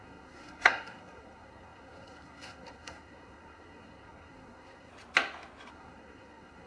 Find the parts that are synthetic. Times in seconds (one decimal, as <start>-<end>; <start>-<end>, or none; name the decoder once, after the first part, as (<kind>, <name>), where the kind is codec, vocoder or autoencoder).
0.0-4.9 (codec, SNAC); 5.7-6.7